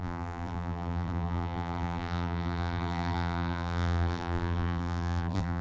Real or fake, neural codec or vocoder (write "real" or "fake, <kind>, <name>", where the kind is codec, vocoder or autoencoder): fake, vocoder, BigVGAN v2